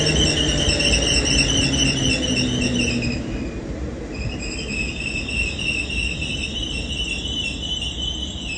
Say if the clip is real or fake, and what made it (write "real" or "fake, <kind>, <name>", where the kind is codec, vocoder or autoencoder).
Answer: real